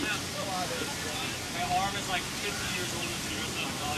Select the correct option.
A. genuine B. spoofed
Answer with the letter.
A